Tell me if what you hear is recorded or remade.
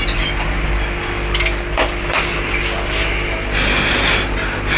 recorded